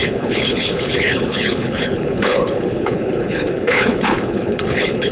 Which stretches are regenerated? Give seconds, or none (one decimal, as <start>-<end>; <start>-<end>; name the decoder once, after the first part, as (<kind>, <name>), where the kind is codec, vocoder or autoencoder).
0.0-5.1 (codec, HILCodec)